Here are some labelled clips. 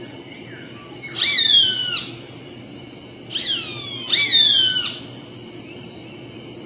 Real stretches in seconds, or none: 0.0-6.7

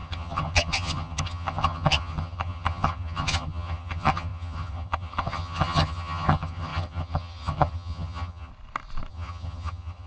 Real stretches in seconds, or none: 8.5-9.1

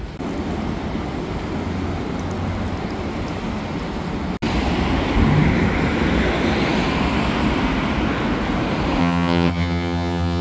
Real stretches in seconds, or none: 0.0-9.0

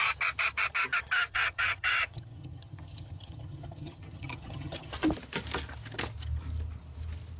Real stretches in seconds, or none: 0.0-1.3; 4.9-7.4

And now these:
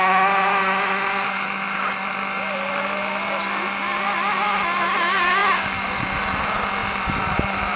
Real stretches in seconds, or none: 0.0-7.8